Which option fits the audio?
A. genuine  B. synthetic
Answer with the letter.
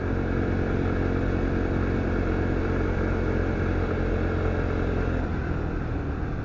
A